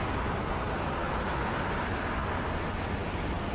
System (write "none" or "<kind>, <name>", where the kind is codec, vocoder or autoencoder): none